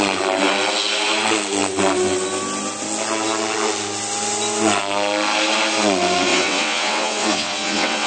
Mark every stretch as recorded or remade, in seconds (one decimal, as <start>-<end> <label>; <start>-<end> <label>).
0.0-6.3 recorded; 6.3-8.1 remade